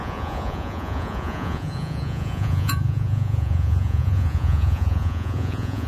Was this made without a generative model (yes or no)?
no